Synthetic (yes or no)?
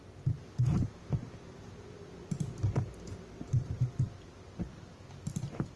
no